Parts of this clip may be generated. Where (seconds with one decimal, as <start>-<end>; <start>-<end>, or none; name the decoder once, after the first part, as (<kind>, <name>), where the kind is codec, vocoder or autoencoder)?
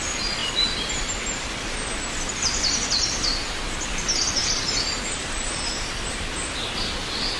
0.0-7.4 (vocoder, BigVGAN v2)